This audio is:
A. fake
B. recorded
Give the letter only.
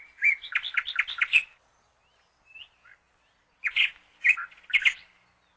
B